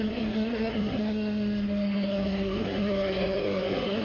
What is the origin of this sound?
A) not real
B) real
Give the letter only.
A